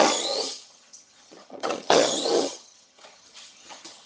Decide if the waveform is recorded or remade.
remade